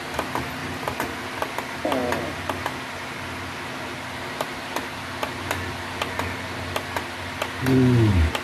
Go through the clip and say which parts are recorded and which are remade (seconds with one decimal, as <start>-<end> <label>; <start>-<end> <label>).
0.0-0.6 recorded; 0.6-1.6 remade; 1.6-8.4 recorded